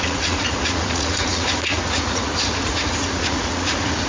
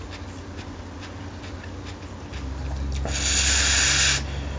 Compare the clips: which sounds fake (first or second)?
first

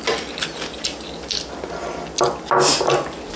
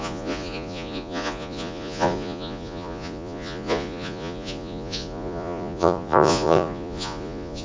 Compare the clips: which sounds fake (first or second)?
second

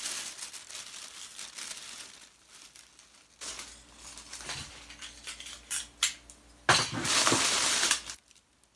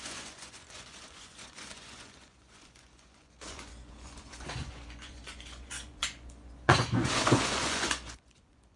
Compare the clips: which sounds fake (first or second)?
second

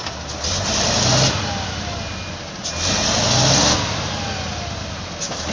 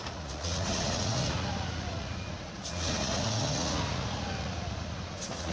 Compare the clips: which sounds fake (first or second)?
second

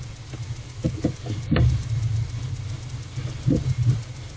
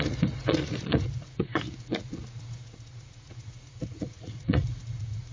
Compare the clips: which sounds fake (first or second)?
second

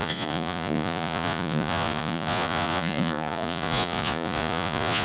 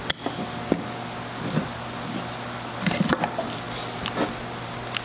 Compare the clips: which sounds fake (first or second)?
first